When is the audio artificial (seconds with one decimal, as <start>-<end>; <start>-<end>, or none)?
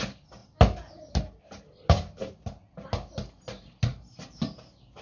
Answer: none